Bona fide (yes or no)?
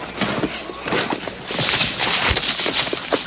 yes